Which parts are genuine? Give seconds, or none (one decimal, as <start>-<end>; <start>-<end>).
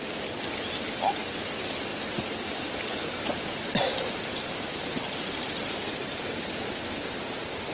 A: 0.0-7.7